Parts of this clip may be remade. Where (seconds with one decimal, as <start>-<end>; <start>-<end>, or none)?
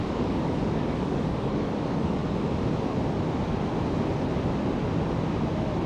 0.0-2.2